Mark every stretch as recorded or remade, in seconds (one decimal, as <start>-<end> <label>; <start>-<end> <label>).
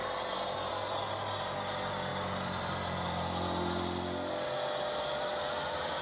0.0-6.0 recorded